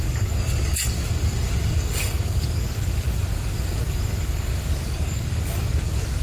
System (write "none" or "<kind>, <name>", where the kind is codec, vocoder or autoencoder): codec, DAC